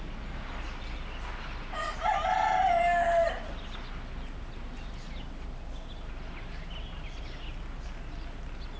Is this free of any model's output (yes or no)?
yes